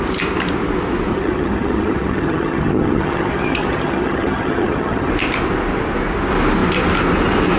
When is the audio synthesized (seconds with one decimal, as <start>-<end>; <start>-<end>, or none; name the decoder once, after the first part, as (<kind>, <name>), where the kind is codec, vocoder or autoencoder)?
1.1-5.1 (vocoder, HiFi-GAN)